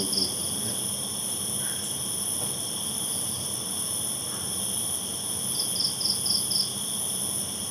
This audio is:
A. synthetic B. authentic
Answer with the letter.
B